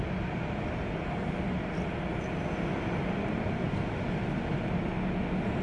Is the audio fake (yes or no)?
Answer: no